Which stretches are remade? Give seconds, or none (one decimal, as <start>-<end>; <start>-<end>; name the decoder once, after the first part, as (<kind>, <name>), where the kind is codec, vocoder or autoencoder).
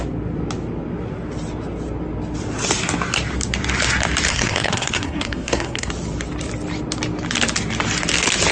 4.3-5.9 (codec, SNAC)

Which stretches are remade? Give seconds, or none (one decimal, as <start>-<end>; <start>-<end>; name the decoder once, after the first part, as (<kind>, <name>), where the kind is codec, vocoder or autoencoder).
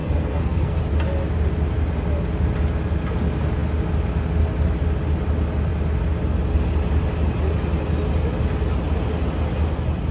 0.0-0.8 (codec, SNAC)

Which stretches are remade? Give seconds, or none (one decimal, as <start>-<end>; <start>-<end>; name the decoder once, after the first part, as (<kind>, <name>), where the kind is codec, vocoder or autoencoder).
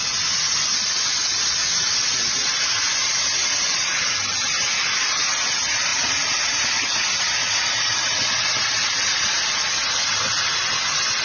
none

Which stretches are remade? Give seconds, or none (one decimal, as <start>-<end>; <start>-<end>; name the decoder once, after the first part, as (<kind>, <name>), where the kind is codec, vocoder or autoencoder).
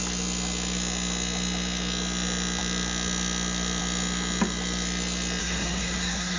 5.4-6.4 (codec, SNAC)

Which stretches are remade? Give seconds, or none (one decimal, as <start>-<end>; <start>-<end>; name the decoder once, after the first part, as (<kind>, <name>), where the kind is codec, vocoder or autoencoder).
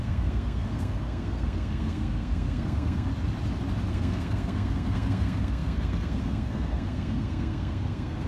0.0-3.1 (codec, SNAC); 3.9-8.3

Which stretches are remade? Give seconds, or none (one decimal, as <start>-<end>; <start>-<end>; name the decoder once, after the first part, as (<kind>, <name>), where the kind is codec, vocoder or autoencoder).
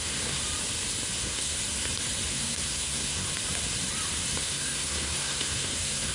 0.0-0.4 (codec, SNAC); 1.2-1.6; 2.3-3.3; 4.4-6.1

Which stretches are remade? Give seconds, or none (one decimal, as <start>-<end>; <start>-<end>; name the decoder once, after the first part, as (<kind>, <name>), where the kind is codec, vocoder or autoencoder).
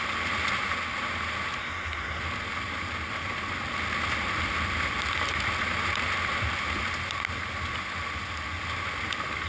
1.6-2.2 (codec, SNAC)